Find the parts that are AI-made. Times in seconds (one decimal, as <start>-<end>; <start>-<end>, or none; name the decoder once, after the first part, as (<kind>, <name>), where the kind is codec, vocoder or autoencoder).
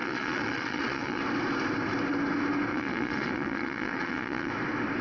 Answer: 0.0-1.2 (vocoder, Vocos); 2.7-4.5